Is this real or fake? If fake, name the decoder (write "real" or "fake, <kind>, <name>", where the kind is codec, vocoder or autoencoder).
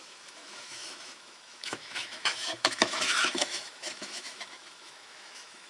fake, autoencoder, DAC-VAE